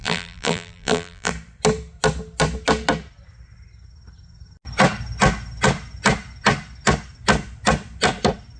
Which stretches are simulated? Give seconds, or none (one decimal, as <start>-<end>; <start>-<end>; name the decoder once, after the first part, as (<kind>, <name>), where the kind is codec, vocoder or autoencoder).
0.0-1.3 (vocoder, BigVGAN v2)